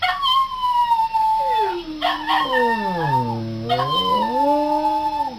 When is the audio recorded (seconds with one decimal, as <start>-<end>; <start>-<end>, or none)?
0.0-0.8; 2.1-5.4